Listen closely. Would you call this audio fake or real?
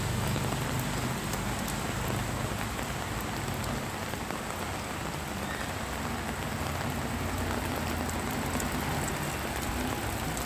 real